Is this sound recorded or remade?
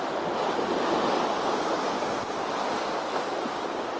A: recorded